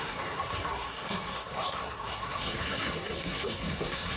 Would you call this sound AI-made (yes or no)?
yes